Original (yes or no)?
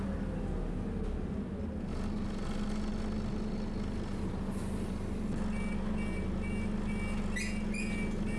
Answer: yes